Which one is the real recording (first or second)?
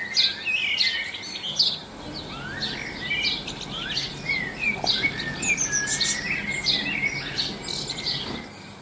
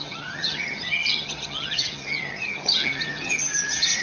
first